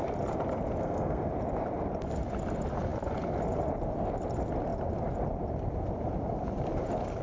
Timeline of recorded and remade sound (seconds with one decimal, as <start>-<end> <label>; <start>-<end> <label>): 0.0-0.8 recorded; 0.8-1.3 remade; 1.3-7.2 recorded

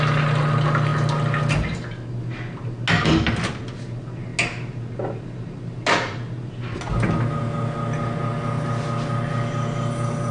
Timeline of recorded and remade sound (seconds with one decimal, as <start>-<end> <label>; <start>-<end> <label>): 0.0-10.3 recorded

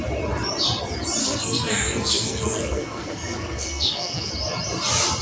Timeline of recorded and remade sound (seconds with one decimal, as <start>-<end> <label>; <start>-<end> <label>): 0.0-1.2 recorded; 1.2-4.3 remade; 4.3-5.2 recorded

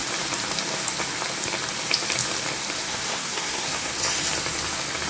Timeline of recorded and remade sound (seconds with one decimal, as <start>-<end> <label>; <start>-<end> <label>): 0.0-2.9 recorded; 2.9-3.9 remade; 3.9-5.1 recorded

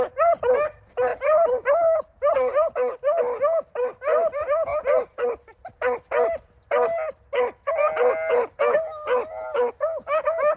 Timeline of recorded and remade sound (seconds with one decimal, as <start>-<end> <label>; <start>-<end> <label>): 0.0-10.6 recorded

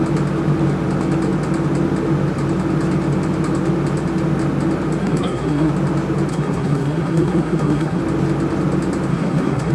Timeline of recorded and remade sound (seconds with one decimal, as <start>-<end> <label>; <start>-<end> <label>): 0.0-5.0 recorded; 5.0-5.7 remade; 5.7-6.3 recorded; 6.3-8.0 remade; 8.0-9.1 recorded; 9.1-9.7 remade

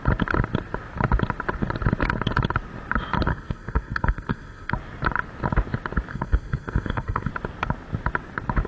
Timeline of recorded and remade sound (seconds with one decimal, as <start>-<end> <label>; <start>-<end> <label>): 0.0-3.3 recorded; 3.3-4.7 remade; 4.7-6.1 recorded; 6.1-7.3 remade; 7.3-8.7 recorded